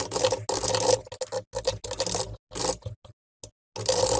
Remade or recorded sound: recorded